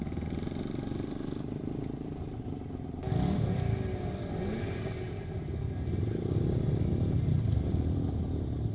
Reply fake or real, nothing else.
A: real